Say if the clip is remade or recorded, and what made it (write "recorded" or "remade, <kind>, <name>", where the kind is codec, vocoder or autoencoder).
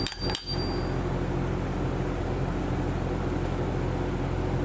recorded